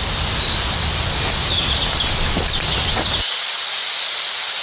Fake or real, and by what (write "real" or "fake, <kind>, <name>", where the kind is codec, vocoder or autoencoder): real